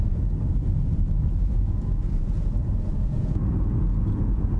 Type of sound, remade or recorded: remade